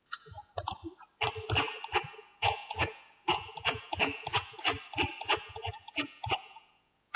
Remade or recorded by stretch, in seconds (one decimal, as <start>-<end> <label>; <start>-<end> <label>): 0.0-0.5 remade; 0.5-2.0 recorded; 2.0-4.7 remade; 4.7-5.2 recorded; 5.2-7.2 remade